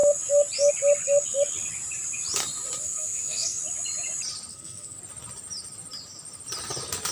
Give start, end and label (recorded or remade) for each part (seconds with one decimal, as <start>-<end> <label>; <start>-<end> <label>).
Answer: 0.0-2.8 recorded; 2.8-3.6 remade; 3.6-4.5 recorded; 4.5-5.0 remade; 5.0-7.1 recorded